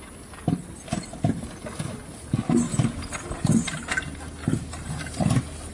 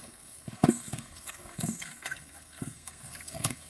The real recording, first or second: first